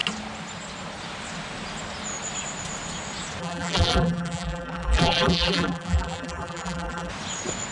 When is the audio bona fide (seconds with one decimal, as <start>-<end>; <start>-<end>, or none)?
0.0-3.4; 7.1-7.7